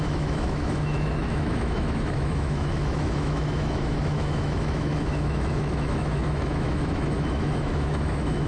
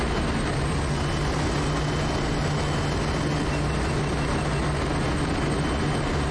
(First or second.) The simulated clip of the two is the first